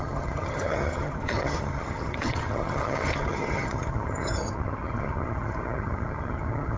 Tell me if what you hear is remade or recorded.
remade